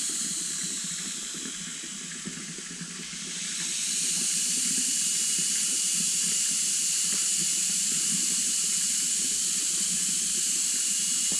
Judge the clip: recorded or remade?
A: remade